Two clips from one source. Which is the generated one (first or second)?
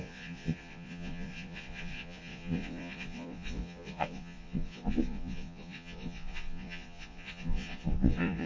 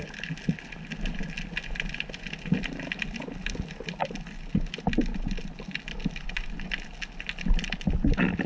first